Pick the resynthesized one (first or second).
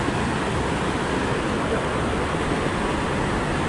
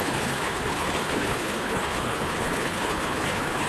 second